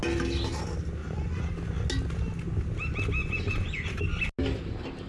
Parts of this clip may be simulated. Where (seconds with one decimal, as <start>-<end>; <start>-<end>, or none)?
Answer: 1.0-1.5; 3.2-4.0